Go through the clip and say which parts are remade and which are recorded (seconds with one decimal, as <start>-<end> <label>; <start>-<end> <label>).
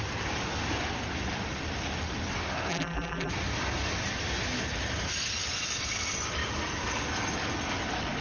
0.0-2.7 recorded; 2.7-3.3 remade; 3.3-8.2 recorded